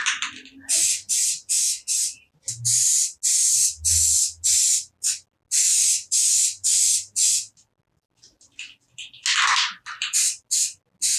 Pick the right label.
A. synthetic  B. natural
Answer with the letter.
B